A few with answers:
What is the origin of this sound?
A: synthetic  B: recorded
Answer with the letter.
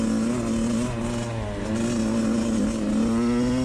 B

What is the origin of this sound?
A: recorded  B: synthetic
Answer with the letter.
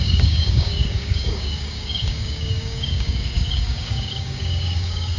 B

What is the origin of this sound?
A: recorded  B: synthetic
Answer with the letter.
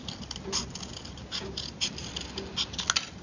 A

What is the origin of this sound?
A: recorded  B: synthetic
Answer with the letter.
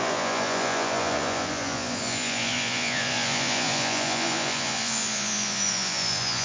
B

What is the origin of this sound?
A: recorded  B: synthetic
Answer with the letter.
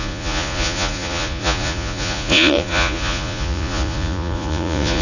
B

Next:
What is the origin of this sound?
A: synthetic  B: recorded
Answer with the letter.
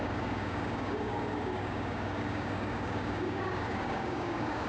A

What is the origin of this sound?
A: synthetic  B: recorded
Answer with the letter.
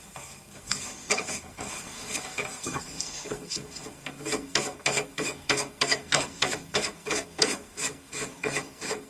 A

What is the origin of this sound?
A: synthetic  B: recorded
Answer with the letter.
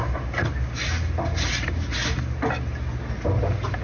B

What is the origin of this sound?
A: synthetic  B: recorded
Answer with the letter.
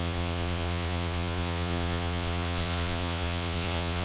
A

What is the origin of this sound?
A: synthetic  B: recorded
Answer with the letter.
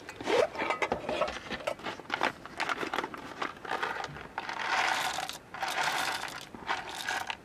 B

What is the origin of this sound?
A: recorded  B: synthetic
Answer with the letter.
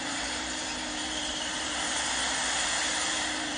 B